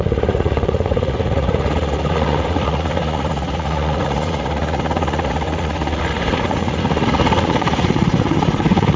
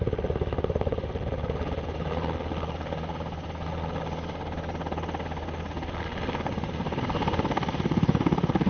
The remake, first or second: first